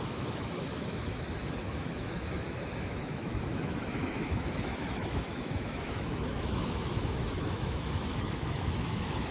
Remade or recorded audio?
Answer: remade